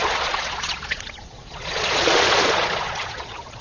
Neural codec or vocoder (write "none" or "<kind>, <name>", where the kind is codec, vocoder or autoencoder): vocoder, Vocos